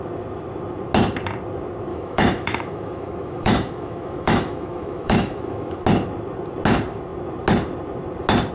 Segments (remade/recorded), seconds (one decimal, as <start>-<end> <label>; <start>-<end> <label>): 0.0-1.9 recorded; 1.9-5.8 remade; 5.8-8.5 recorded